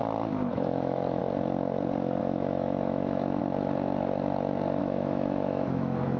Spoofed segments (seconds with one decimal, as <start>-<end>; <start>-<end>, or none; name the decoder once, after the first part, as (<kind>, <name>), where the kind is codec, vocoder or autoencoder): 0.5-1.2 (autoencoder, DAC-VAE); 2.2-3.4; 4.8-6.2